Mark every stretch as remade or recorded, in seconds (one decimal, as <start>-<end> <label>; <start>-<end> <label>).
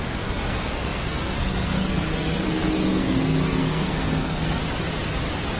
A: 0.0-4.6 remade; 4.6-5.6 recorded